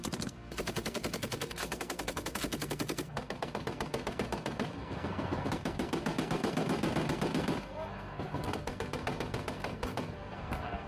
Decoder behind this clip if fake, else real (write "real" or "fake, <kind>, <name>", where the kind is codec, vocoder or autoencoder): fake, codec, SNAC